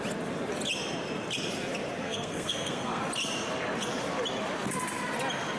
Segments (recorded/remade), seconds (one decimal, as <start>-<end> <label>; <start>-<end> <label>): 0.0-2.0 recorded; 2.0-3.0 remade; 3.0-5.6 recorded